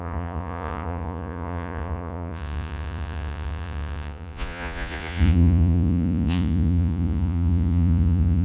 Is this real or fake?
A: fake